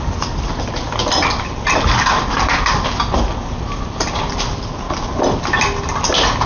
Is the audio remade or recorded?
recorded